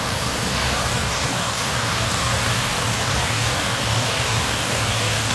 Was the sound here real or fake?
fake